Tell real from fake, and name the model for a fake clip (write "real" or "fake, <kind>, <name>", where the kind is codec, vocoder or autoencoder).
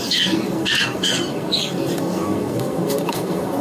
fake, codec, SNAC